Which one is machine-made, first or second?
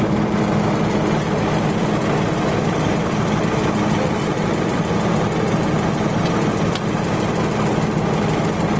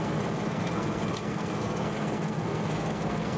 second